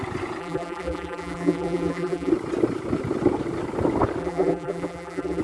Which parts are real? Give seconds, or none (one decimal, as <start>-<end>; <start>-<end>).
0.0-0.4; 2.3-4.2